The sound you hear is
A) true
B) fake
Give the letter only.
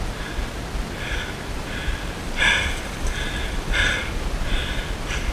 A